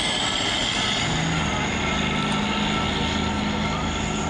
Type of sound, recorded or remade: recorded